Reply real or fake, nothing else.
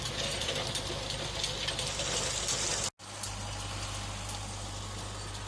real